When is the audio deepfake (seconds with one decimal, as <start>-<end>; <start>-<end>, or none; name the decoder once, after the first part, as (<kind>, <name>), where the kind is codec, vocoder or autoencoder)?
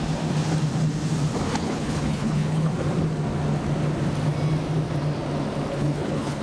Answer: 1.6-2.7 (codec, HILCodec); 5.7-6.4